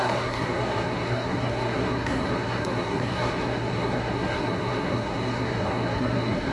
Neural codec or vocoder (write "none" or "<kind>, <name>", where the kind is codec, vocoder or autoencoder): codec, SNAC